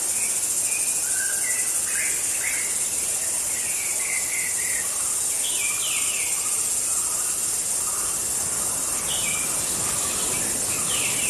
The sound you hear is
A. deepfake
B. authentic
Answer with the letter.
B